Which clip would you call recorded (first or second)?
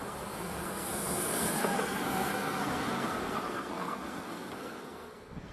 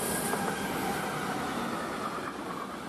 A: second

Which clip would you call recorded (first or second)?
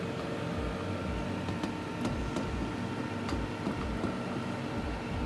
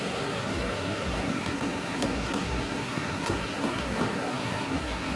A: first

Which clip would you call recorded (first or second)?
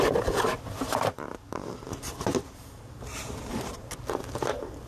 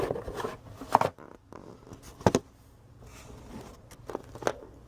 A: second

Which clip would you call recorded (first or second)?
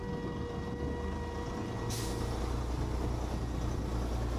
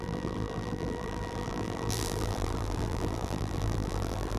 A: first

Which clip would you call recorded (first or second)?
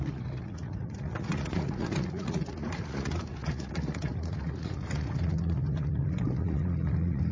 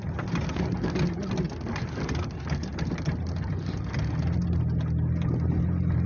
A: second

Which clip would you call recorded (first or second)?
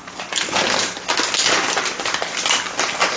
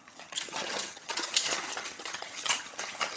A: first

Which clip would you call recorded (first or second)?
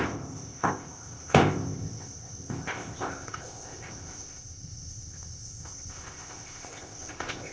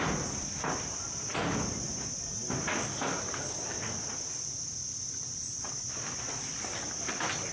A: second